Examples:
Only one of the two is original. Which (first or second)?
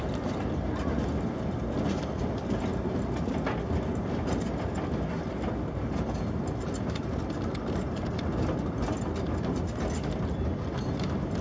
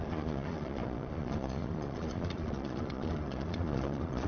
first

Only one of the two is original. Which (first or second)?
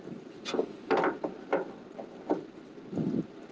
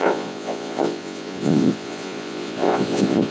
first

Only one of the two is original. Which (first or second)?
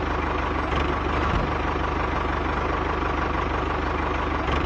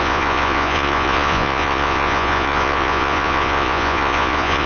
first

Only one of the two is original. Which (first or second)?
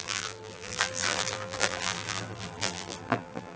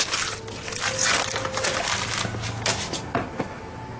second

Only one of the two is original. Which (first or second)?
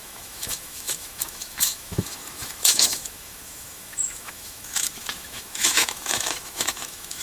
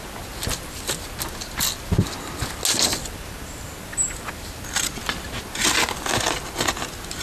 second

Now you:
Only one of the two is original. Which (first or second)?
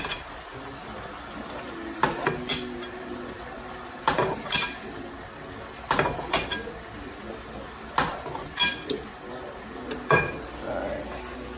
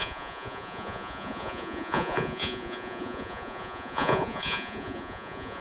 first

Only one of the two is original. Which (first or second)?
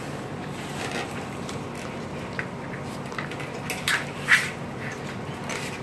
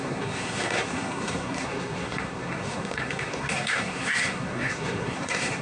first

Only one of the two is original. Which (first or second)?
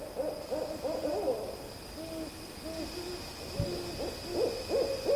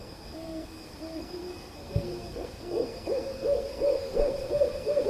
first